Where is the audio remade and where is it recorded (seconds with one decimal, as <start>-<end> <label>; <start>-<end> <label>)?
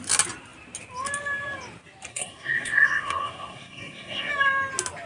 0.0-2.1 recorded; 2.1-4.3 remade; 4.3-5.1 recorded